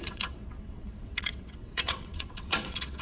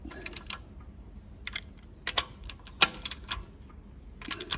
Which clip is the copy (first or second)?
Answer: first